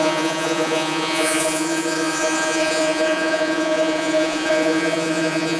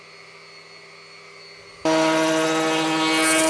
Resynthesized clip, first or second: first